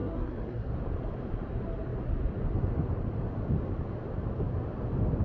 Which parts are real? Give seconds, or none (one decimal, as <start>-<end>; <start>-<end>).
0.7-5.2